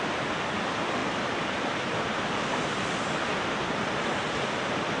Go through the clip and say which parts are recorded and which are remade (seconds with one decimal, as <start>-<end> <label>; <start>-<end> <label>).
0.0-5.0 recorded